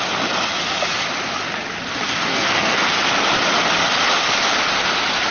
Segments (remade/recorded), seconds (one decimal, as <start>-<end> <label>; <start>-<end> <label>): 0.0-2.3 recorded; 2.3-2.9 remade; 2.9-5.3 recorded